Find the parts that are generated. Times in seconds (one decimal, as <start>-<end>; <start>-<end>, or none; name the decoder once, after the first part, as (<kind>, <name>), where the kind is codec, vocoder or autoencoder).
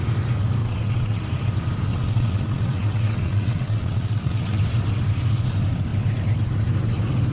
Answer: 0.6-1.2 (vocoder, WaveNeXt); 1.9-4.6